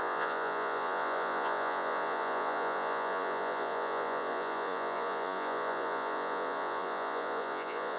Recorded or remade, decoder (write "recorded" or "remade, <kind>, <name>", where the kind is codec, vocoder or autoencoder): remade, vocoder, Vocos